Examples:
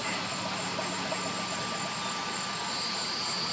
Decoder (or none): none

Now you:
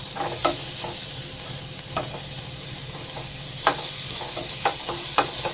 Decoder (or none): none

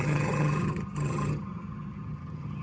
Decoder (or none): vocoder, HiFi-GAN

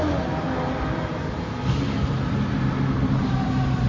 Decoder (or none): none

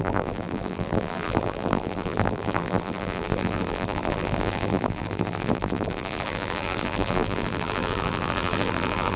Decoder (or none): vocoder, BigVGAN v2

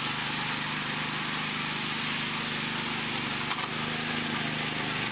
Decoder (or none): none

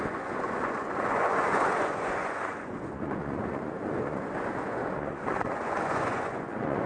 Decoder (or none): vocoder, Vocos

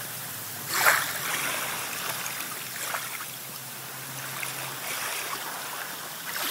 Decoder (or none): none